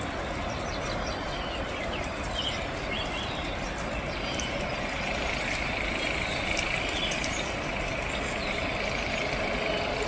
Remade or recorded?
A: recorded